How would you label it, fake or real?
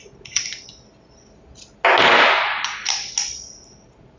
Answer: real